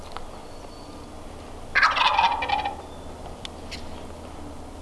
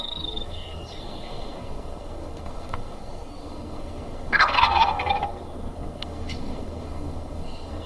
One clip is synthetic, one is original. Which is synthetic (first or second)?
second